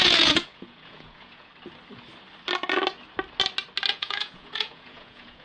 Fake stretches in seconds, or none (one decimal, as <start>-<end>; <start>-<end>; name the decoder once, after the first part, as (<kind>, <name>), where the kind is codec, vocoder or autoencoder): 0.0-1.5 (vocoder, Vocos); 3.9-5.4